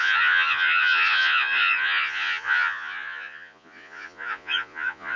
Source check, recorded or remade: remade